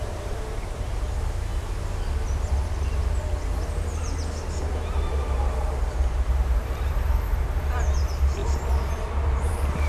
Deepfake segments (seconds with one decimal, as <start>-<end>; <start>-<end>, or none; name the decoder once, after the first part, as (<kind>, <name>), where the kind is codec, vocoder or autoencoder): 0.0-1.5 (vocoder, BigVGAN v2); 4.6-9.9